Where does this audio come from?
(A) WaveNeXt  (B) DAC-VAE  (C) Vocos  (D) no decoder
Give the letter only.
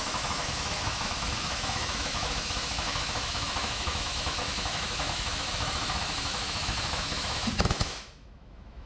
B